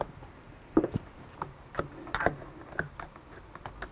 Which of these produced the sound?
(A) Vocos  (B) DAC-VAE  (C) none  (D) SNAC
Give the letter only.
C